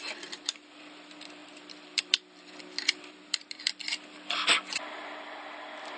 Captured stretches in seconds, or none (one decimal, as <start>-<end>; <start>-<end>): none